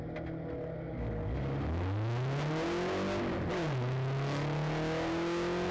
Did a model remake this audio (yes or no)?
no